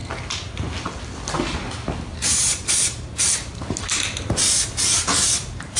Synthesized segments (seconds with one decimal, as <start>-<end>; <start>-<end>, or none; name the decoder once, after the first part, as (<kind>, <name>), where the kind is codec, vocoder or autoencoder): 2.1-5.8 (vocoder, BigVGAN v2)